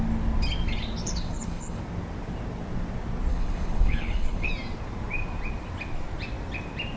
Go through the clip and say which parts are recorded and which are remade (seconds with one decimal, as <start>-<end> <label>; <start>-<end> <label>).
0.0-1.0 recorded; 1.0-1.8 remade; 1.8-3.3 recorded; 3.3-4.5 remade; 4.5-7.0 recorded